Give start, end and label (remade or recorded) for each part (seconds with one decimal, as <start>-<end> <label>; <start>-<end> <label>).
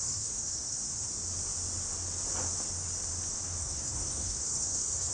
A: 0.0-1.1 remade; 1.1-3.6 recorded; 3.6-5.1 remade